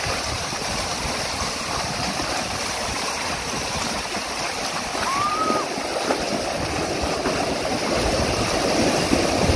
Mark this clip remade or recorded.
recorded